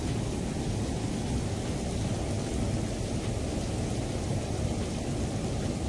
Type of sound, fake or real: real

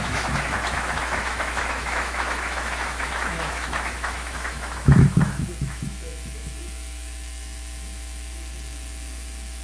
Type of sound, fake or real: fake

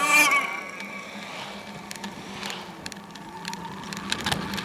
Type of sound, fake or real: real